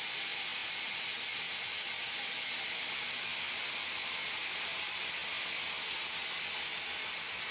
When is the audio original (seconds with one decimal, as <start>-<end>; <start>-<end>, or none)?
0.0-7.5